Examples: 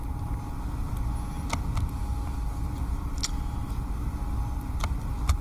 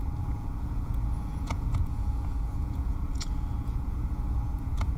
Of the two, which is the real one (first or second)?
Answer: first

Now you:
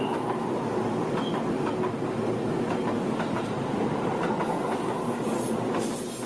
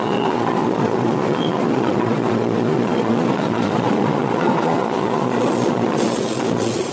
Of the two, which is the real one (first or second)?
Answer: first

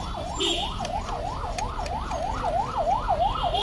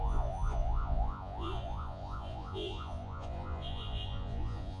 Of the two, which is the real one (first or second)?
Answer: first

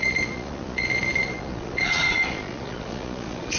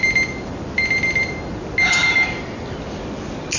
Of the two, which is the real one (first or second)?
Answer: second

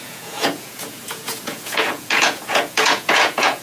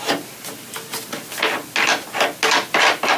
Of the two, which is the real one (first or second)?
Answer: second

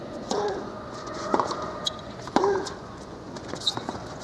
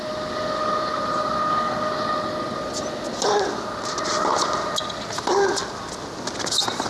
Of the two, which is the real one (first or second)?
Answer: second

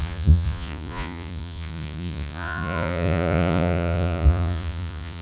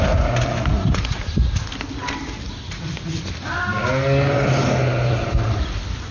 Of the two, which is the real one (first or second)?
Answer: second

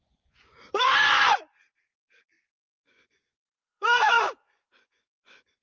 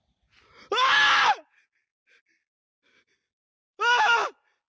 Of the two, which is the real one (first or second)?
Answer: second